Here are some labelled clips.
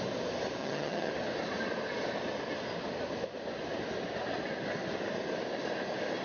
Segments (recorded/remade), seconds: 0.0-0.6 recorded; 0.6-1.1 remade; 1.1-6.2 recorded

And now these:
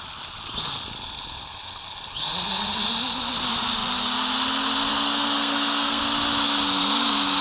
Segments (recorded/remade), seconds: 0.0-4.9 recorded; 4.9-6.0 remade; 6.0-7.4 recorded

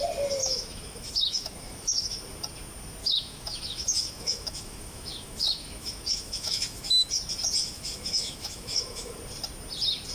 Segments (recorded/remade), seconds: 0.0-0.4 recorded; 0.4-2.2 remade; 2.2-3.0 recorded; 3.0-7.1 remade; 7.1-7.6 recorded; 7.6-9.2 remade; 9.2-10.1 recorded